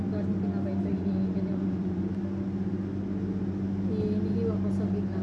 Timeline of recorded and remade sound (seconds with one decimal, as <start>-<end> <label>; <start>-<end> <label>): 0.0-0.9 recorded; 0.9-2.1 remade; 2.1-5.2 recorded